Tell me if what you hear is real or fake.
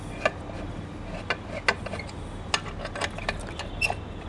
real